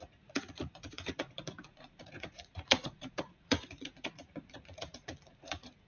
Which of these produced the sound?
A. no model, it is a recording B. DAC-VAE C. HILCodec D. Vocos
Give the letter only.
D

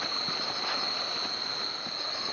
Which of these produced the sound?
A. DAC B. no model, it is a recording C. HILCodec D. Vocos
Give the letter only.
B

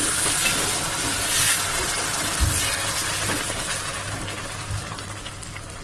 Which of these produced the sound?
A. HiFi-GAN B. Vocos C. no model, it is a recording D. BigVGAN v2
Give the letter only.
C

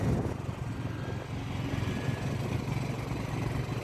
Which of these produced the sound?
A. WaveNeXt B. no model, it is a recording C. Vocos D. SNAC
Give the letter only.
B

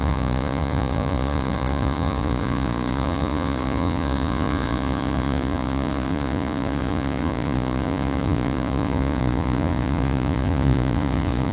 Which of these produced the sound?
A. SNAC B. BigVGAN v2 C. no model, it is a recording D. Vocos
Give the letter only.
D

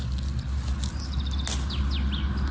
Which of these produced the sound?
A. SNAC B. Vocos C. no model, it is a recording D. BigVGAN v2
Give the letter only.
C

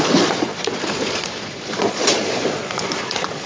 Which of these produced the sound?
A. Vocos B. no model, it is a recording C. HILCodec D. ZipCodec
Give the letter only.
A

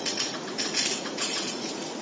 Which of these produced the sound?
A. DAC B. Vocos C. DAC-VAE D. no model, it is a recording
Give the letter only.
B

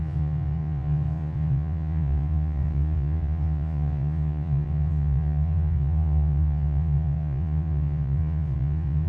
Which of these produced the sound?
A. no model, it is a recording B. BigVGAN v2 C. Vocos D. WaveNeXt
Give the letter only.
C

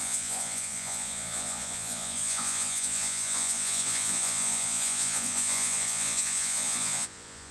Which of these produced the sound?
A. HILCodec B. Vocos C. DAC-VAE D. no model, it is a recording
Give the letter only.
B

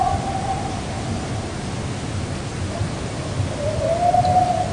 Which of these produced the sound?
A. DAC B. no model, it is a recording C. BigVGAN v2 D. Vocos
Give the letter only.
B